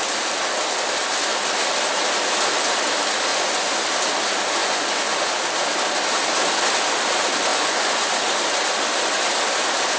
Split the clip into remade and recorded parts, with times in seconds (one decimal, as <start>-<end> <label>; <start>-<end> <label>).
0.0-3.3 recorded; 3.3-3.9 remade; 3.9-4.6 recorded; 4.6-5.3 remade; 5.3-7.5 recorded; 7.5-8.1 remade; 8.1-10.0 recorded

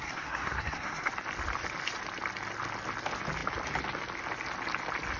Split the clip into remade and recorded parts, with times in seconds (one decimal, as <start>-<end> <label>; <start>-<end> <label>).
0.0-1.1 remade; 1.1-5.2 recorded